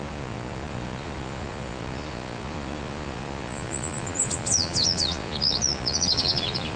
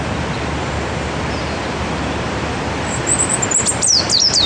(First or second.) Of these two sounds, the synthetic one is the first